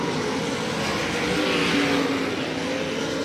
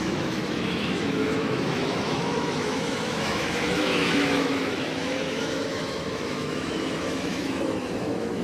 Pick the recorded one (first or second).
first